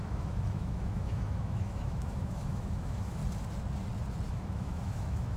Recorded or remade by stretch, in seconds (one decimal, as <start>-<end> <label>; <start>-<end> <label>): 0.0-3.2 remade; 3.2-4.3 recorded; 4.3-5.4 remade